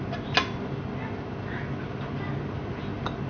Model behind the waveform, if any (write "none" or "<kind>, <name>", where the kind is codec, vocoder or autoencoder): none